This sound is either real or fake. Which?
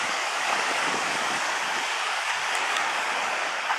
fake